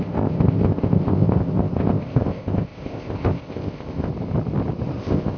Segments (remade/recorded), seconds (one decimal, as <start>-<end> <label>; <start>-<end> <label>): 0.0-4.1 remade; 4.1-5.0 recorded; 5.0-5.4 remade